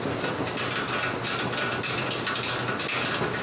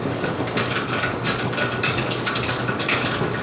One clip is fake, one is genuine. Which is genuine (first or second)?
first